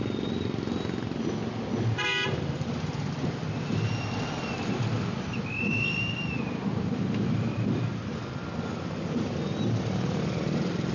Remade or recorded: recorded